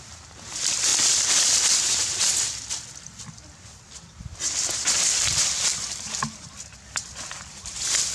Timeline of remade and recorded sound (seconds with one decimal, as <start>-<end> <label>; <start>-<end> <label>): 0.0-8.1 recorded